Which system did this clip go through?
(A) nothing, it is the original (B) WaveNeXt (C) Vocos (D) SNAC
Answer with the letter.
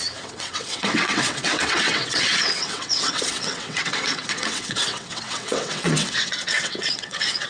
B